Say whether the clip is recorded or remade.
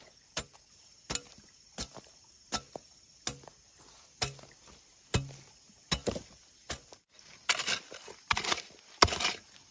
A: recorded